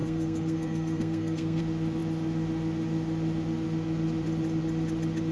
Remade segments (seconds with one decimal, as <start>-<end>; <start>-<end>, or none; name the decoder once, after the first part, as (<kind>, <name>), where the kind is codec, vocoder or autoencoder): 0.0-1.6 (codec, SNAC)